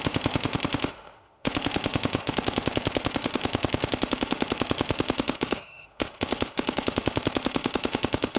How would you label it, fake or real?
fake